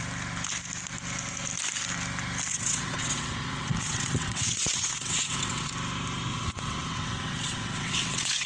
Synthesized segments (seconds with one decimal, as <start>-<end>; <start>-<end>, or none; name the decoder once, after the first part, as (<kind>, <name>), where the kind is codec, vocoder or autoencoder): 2.5-5.7 (vocoder, WaveNeXt); 6.3-8.5